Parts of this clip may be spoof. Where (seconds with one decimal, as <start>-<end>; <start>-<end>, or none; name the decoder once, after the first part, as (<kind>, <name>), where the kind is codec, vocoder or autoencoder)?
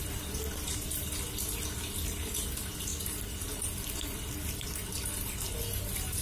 2.9-5.5 (vocoder, BigVGAN v2)